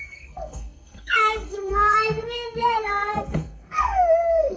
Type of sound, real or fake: fake